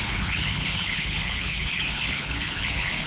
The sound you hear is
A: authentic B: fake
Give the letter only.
B